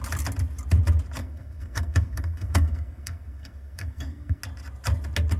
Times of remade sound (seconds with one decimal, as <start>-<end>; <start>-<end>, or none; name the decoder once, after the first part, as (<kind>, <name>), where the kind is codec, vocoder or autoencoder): 1.2-4.4 (codec, SNAC)